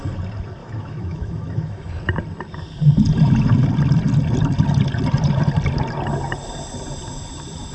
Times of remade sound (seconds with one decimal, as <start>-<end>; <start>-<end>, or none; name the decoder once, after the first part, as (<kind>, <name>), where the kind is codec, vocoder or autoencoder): 0.6-1.9 (autoencoder, DAC-VAE)